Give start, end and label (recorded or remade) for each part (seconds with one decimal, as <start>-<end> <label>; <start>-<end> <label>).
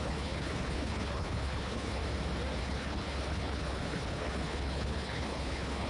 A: 0.0-2.0 remade; 2.0-2.6 recorded; 2.6-5.9 remade